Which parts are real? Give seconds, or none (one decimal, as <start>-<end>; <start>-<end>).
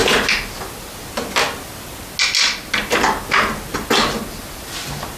0.0-5.2